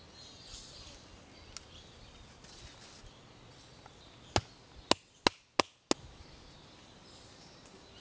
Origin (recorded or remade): recorded